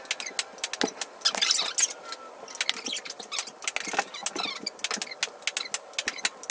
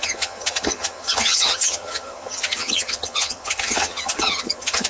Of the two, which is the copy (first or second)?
second